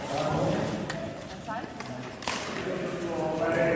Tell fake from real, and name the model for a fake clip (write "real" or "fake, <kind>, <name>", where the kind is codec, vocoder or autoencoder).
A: real